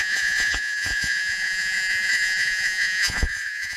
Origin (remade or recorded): remade